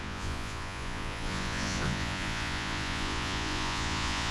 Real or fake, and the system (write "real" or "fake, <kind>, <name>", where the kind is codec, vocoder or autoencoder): fake, vocoder, Vocos